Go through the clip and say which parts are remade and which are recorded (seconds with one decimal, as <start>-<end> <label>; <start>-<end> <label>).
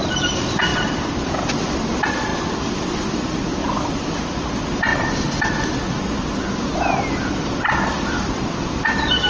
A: 0.0-4.9 remade; 4.9-7.1 recorded; 7.1-9.3 remade